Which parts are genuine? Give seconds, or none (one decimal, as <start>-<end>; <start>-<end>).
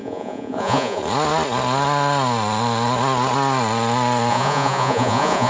1.0-4.3